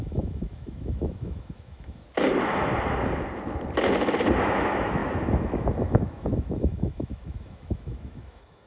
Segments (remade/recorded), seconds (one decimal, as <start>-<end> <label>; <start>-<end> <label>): 0.0-2.0 remade; 2.0-4.4 recorded; 4.4-8.7 remade